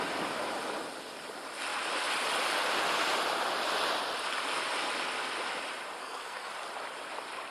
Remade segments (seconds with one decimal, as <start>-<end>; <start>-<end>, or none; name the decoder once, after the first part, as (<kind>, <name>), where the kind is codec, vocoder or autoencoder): 6.0-6.5 (codec, SNAC)